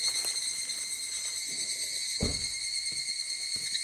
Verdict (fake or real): real